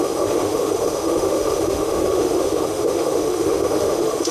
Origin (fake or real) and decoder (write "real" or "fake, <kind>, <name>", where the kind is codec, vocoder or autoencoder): fake, autoencoder, DAC-VAE